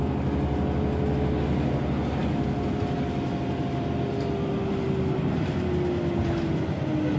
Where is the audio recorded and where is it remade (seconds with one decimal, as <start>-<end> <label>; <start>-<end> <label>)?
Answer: 0.0-7.2 recorded